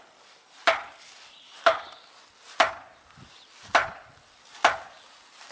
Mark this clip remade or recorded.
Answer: recorded